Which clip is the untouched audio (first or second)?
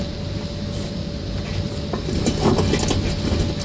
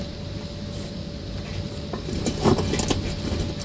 first